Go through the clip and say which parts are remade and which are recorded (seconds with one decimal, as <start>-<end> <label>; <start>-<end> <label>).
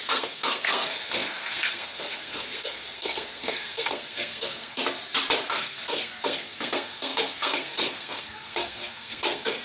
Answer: 0.0-4.8 remade; 4.8-5.5 recorded; 5.5-9.6 remade